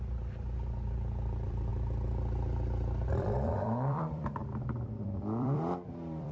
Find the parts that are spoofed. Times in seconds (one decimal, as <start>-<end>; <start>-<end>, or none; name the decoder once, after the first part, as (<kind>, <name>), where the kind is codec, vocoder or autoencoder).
0.0-1.7 (vocoder, BigVGAN v2); 3.1-6.3